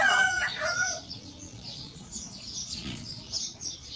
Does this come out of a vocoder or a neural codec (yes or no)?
yes